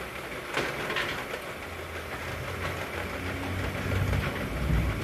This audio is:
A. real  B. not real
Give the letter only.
A